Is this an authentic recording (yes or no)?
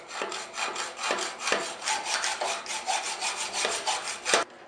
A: yes